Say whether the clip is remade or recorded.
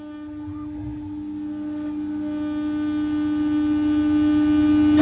recorded